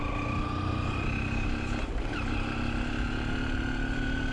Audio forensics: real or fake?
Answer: real